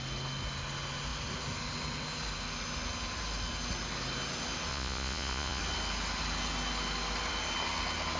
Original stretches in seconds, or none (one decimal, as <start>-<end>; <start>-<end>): 0.0-4.7; 5.6-8.2